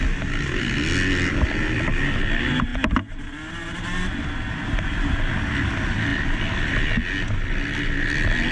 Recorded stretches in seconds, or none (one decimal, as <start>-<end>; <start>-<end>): 0.0-8.5